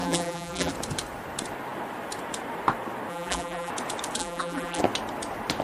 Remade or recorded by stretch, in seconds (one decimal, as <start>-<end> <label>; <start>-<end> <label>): 0.0-0.7 remade; 0.7-3.1 recorded; 3.1-3.7 remade; 3.7-4.2 recorded; 4.2-4.8 remade; 4.8-5.6 recorded